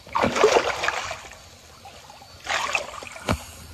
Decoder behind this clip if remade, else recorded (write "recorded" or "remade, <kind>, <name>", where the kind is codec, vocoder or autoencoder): remade, vocoder, BigVGAN v2